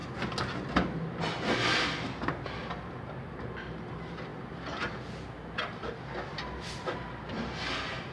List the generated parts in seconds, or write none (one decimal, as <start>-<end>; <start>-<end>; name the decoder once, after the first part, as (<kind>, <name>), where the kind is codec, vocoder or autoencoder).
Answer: none

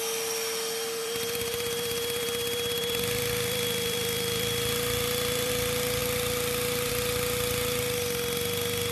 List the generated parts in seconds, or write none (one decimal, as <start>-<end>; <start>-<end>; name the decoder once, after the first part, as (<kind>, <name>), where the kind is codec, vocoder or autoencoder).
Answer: 1.0-5.5 (vocoder, BigVGAN v2); 6.0-6.9

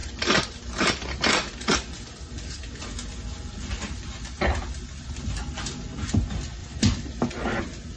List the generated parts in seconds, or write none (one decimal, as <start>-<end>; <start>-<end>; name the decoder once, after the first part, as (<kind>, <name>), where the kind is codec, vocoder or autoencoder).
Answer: 0.0-2.5 (vocoder, BigVGAN v2); 6.6-7.3

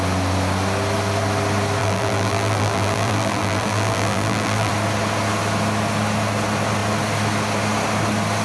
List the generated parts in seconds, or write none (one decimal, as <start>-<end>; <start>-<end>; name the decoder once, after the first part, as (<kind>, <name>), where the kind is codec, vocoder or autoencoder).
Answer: 1.8-4.7 (vocoder, BigVGAN v2)